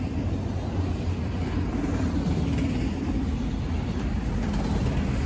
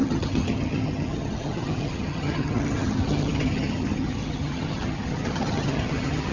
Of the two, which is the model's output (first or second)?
second